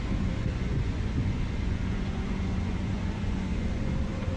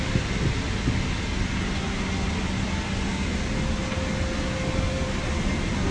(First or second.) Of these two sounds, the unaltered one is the second